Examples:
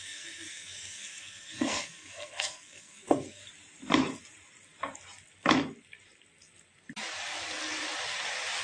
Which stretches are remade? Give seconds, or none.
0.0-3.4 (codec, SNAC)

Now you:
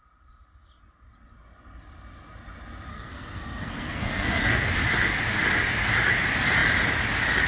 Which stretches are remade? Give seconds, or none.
2.9-4.7 (codec, SNAC)

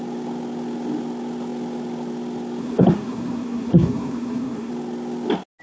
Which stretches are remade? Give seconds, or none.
2.6-4.7 (codec, SNAC)

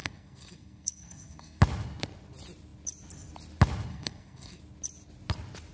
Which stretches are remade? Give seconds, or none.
0.0-1.6 (codec, SNAC); 3.9-4.6

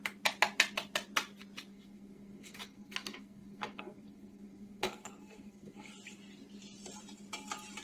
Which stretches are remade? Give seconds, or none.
1.7-5.9 (codec, SNAC)

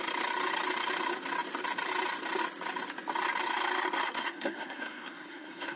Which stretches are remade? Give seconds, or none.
4.0-5.8 (codec, SNAC)

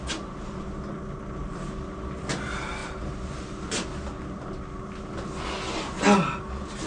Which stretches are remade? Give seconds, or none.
none